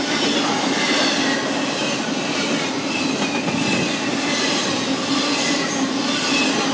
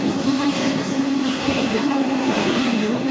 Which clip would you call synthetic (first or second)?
second